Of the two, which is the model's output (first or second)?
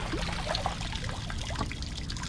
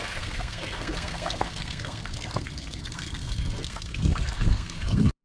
second